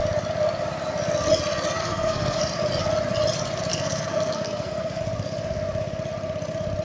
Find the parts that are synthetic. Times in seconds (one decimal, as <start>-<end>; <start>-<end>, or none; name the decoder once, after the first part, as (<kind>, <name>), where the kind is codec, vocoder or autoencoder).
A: 1.8-2.4 (codec, SNAC); 3.7-5.0